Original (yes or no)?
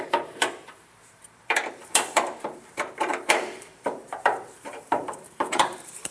no